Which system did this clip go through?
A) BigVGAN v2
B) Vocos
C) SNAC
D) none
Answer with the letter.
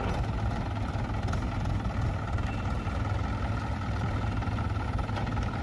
D